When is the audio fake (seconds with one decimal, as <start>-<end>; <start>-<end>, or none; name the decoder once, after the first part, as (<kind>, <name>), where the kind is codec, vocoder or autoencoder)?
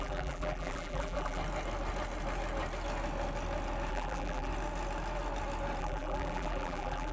0.0-1.4 (vocoder, BigVGAN v2); 3.9-4.5; 5.8-7.1